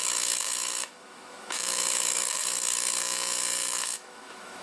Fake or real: fake